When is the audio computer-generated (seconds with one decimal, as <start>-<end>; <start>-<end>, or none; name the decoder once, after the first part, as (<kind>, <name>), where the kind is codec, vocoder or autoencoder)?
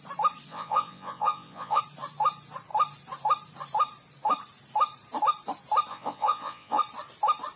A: 0.5-1.8 (vocoder, Vocos); 5.9-6.8